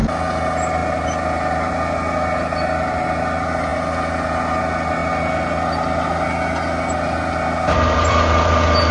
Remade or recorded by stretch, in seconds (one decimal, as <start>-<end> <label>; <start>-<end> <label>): 0.0-8.9 recorded